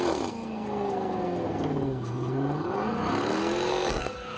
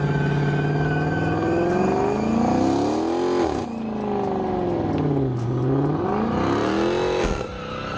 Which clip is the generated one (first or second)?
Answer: first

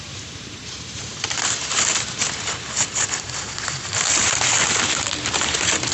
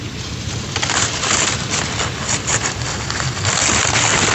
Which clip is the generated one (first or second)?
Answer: first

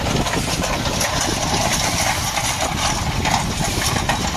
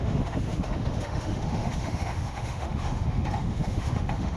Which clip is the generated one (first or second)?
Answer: second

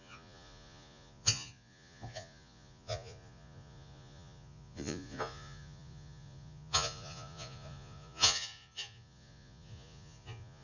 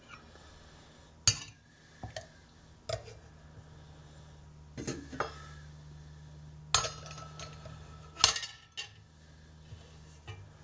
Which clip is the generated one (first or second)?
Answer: first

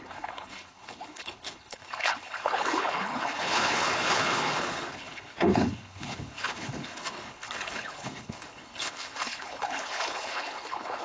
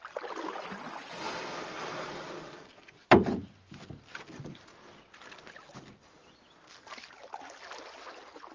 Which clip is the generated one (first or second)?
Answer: first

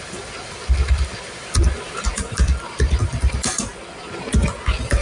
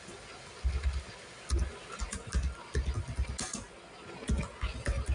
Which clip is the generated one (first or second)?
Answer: first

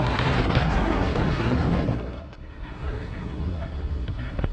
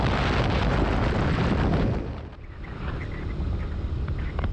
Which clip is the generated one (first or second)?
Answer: first